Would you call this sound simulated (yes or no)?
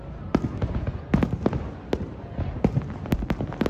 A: no